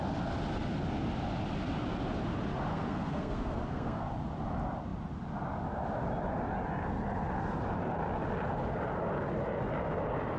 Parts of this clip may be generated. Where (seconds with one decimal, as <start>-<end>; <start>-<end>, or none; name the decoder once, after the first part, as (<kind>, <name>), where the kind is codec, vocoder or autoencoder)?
2.7-4.1 (codec, SNAC)